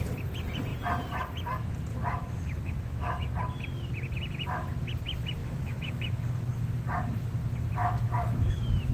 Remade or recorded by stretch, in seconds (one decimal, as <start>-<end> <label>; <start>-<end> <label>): 0.0-1.9 recorded; 1.9-3.4 remade; 3.4-5.4 recorded; 5.4-6.5 remade; 6.5-7.8 recorded; 7.8-8.9 remade